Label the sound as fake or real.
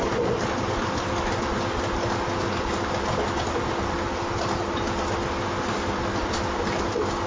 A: real